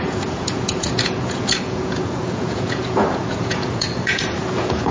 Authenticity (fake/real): fake